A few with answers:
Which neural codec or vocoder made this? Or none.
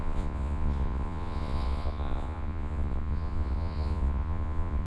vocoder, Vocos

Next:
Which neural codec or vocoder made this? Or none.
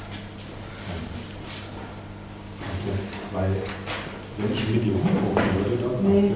none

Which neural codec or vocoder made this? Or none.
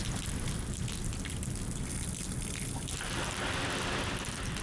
none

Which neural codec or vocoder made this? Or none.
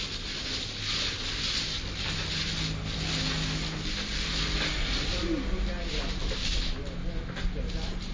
none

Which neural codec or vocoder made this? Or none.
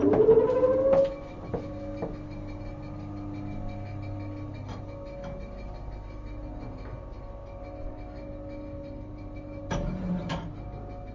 none